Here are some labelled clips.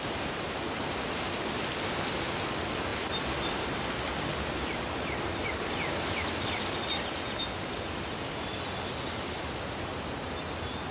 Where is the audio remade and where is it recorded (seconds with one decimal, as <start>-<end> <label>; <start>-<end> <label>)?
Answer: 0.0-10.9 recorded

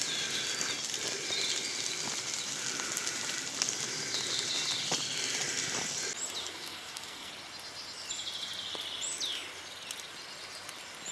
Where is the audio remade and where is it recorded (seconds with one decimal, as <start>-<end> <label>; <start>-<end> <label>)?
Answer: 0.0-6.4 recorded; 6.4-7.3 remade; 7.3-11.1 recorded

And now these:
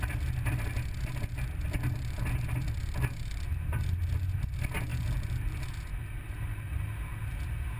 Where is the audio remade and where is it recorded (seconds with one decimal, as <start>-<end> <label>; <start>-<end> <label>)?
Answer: 0.0-7.8 recorded

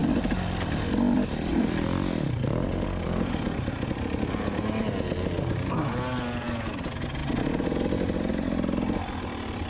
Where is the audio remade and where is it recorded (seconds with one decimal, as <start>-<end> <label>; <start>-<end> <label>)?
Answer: 0.0-3.9 remade; 3.9-7.2 recorded; 7.2-8.3 remade; 8.3-9.7 recorded

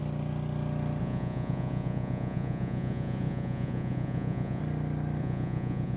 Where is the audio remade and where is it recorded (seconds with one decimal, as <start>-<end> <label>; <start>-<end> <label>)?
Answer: 0.0-1.0 recorded; 1.0-4.6 remade; 4.6-5.2 recorded; 5.2-6.0 remade